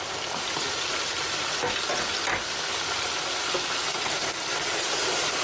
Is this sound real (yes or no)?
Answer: yes